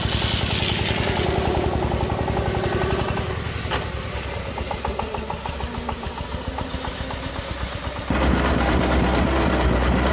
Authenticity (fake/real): real